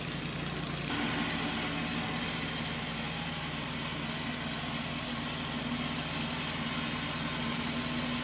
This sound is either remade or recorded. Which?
recorded